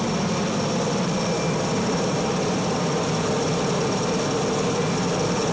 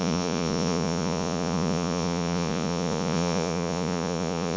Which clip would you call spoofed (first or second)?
second